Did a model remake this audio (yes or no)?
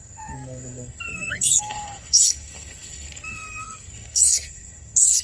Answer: yes